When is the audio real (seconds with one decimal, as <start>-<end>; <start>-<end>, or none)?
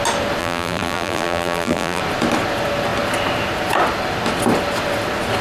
0.0-0.4; 2.0-5.4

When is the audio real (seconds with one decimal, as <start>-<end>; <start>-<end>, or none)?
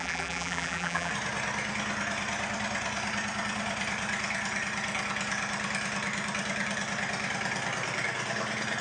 1.1-8.8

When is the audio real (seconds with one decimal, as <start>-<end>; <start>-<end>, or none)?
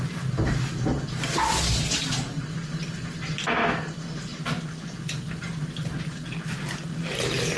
0.0-7.6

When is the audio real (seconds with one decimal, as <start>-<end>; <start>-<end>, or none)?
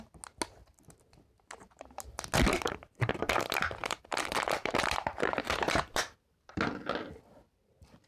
0.0-2.5; 3.1-3.8; 6.6-8.1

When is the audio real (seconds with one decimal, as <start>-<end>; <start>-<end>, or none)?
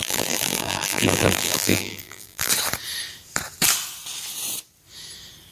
2.5-5.5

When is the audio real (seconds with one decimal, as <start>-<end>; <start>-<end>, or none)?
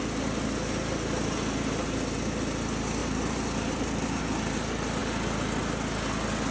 0.0-3.0; 4.2-6.5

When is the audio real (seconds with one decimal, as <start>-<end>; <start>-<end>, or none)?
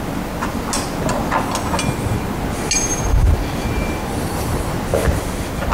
0.0-3.6; 4.8-5.7